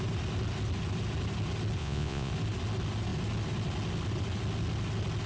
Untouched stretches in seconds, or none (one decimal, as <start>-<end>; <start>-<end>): 0.0-1.8; 2.3-5.3